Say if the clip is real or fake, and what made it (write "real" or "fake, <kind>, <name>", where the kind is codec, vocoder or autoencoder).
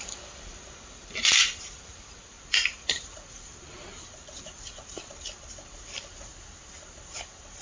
fake, vocoder, BigVGAN v2